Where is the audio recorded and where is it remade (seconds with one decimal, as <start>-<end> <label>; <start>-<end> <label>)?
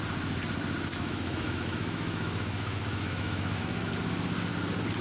0.0-0.9 recorded; 0.9-3.9 remade; 3.9-5.0 recorded